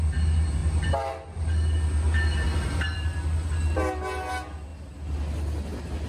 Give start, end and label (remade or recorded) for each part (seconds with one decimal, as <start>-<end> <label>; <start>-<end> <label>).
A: 0.0-6.1 recorded